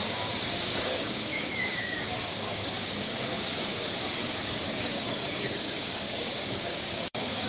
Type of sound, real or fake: fake